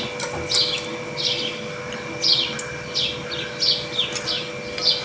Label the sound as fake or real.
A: real